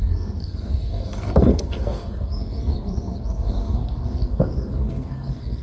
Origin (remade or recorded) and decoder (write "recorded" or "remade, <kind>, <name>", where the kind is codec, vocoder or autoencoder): remade, codec, SNAC